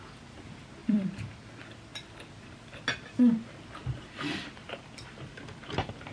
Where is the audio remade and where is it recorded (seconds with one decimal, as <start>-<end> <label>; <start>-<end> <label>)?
0.0-0.8 recorded; 0.8-1.5 remade; 1.5-6.1 recorded